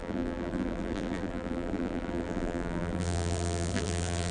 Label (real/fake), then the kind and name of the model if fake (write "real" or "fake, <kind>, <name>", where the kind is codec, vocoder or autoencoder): fake, vocoder, BigVGAN v2